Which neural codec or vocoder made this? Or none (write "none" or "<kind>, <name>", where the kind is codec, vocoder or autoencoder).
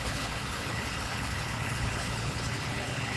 codec, HILCodec